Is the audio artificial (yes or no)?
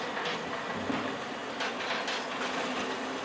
no